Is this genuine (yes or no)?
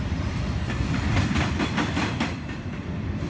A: no